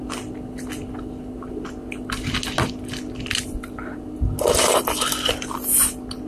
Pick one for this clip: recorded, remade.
recorded